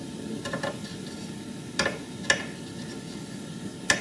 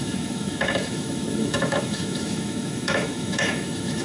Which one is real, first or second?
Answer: first